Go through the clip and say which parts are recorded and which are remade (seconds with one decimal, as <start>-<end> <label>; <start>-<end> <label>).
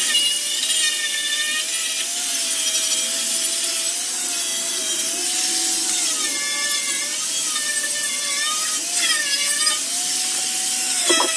0.0-11.4 recorded